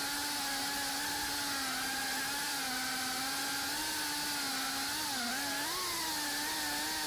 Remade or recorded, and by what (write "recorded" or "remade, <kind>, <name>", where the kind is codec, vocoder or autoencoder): recorded